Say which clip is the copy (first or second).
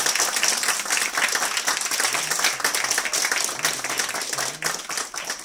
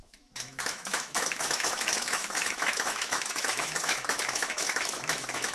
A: second